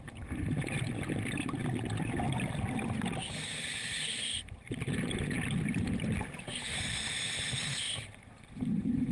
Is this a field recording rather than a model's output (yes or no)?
yes